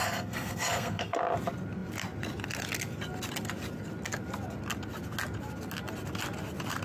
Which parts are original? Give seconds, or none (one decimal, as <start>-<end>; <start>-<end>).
1.2-6.8

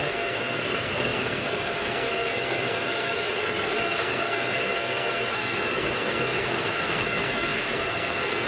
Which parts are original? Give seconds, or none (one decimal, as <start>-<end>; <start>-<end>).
none

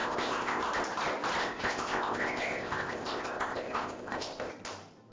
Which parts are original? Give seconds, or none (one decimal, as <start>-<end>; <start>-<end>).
0.6-1.4; 4.5-5.1

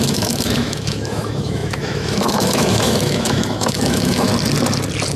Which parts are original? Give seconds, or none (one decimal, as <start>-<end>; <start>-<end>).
4.3-5.2

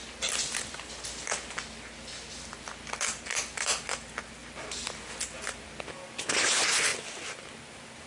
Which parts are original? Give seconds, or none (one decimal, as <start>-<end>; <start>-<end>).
0.0-8.1